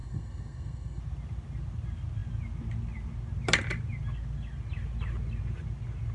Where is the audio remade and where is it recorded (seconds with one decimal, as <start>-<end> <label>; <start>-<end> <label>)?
0.0-1.0 remade; 1.0-6.1 recorded